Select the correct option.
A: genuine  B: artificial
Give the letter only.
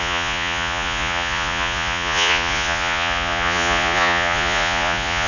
B